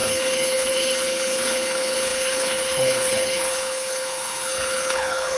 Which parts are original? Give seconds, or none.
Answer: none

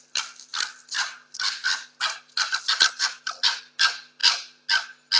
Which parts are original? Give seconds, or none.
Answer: 0.0-5.2

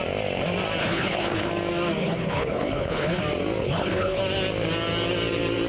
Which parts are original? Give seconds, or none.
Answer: 0.0-0.8; 1.5-2.0; 3.2-3.6; 4.2-5.7